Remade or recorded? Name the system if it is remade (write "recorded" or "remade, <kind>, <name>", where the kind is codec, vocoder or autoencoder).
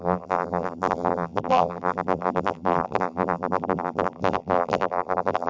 remade, vocoder, BigVGAN v2